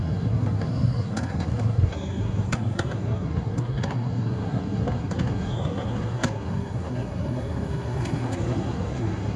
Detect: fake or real fake